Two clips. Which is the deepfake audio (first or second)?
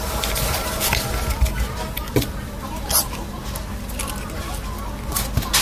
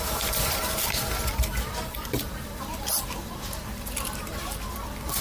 second